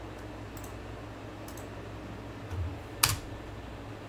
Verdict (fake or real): real